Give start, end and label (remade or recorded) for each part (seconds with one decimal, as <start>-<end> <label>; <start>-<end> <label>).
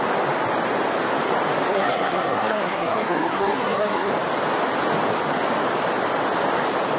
0.0-1.7 recorded; 1.7-4.1 remade; 4.1-7.0 recorded